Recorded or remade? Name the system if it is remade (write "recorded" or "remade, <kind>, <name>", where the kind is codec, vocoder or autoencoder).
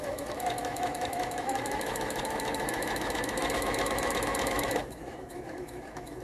remade, autoencoder, DAC-VAE